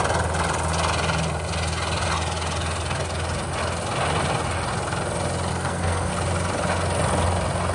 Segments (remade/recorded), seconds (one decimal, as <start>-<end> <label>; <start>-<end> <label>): 0.0-5.5 recorded; 5.5-6.1 remade; 6.1-7.7 recorded